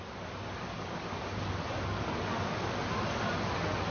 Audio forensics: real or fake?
real